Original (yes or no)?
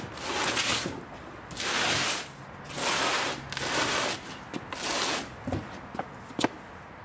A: yes